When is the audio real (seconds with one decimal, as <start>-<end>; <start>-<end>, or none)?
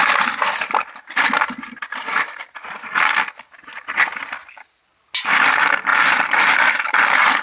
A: 0.0-7.4